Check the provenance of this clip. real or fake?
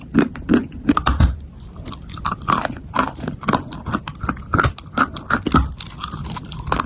real